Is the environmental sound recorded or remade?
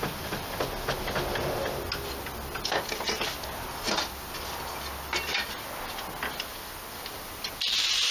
recorded